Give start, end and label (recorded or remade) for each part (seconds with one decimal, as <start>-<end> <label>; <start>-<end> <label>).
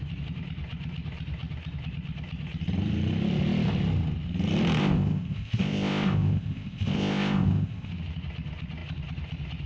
0.0-4.8 recorded; 4.8-7.9 remade; 7.9-9.7 recorded